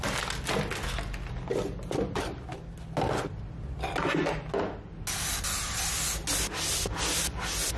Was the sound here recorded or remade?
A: recorded